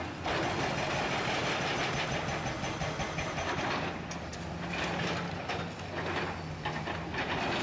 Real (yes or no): yes